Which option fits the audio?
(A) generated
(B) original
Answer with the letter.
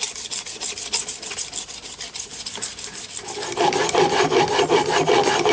B